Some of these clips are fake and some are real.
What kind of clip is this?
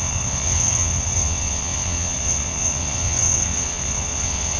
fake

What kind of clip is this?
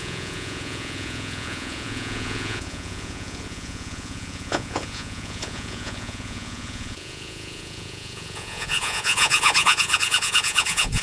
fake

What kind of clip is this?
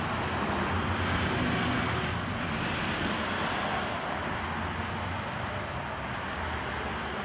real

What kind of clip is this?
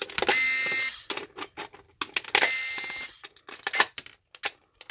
real